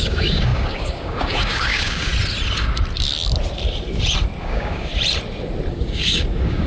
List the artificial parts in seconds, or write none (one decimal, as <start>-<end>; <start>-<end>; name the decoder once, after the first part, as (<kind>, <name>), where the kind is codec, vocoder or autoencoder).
0.0-2.1 (codec, DAC); 4.4-4.9; 5.7-6.7